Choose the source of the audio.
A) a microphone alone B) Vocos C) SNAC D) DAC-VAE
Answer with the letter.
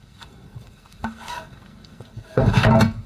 C